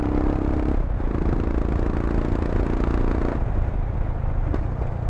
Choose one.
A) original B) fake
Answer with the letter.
A